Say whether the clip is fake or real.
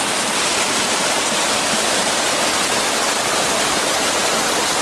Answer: real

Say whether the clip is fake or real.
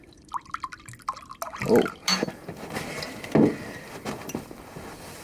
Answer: real